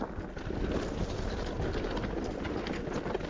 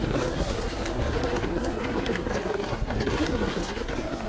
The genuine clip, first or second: first